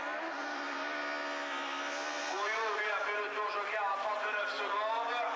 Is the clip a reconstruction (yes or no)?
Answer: no